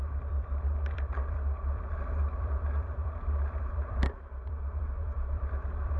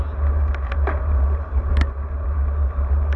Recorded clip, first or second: second